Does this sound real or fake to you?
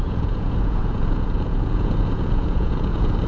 fake